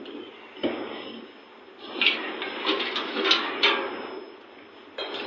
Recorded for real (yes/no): yes